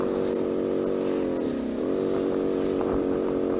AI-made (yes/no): no